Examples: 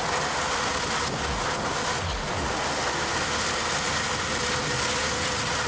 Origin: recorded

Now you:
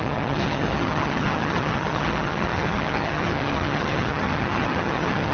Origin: remade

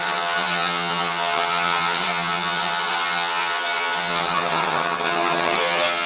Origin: remade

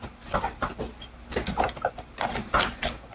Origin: recorded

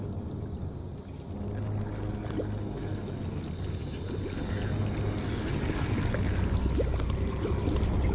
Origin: recorded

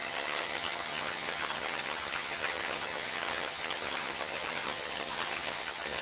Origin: remade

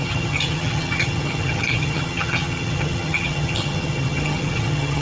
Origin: remade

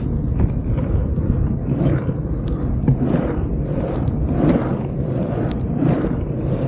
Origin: recorded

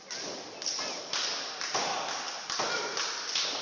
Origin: recorded